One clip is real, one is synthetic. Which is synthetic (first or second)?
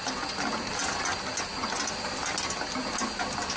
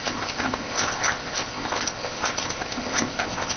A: second